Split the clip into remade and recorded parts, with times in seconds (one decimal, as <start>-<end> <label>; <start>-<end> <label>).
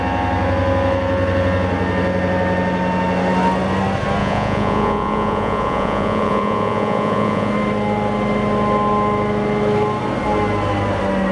0.0-4.2 recorded; 4.2-7.5 remade; 7.5-11.3 recorded